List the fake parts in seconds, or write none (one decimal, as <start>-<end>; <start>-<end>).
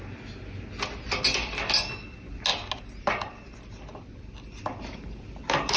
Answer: none